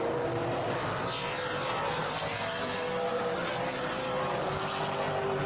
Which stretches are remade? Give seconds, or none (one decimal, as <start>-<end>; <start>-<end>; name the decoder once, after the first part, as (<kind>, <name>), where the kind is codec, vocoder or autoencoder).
none